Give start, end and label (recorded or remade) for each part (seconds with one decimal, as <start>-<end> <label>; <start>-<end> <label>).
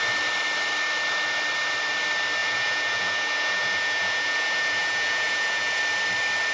0.0-2.4 recorded; 2.4-5.8 remade; 5.8-6.5 recorded